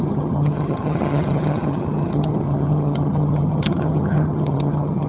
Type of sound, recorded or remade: remade